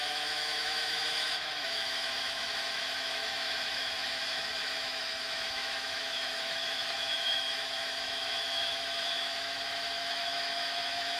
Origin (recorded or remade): remade